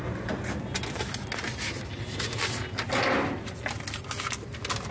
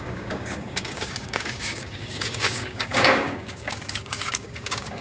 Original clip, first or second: first